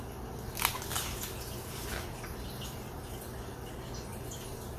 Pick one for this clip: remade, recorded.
recorded